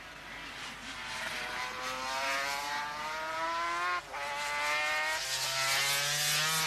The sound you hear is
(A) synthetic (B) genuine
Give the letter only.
B